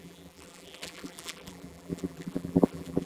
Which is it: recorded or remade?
remade